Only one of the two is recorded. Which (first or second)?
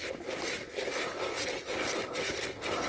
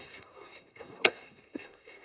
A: first